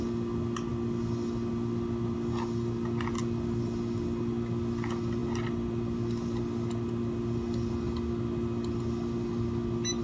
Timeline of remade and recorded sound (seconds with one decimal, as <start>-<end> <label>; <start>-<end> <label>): 0.0-10.0 recorded